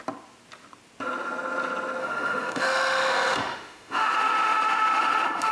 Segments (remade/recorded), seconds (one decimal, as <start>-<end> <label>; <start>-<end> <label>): 0.0-2.0 recorded; 2.0-5.5 remade